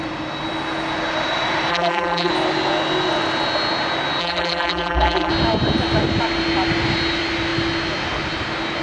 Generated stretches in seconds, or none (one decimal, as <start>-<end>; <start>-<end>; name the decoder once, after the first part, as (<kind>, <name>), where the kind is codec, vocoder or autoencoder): 1.7-2.3 (vocoder, BigVGAN v2); 4.2-5.3